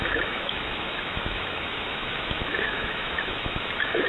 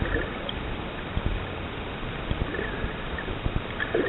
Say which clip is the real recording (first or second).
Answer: second